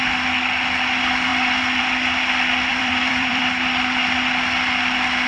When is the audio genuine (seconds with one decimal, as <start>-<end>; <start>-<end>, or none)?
0.0-2.7; 3.4-5.3